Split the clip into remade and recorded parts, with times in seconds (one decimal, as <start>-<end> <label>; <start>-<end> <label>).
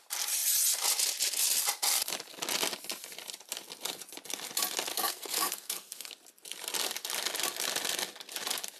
0.0-4.9 recorded; 4.9-6.1 remade; 6.1-8.8 recorded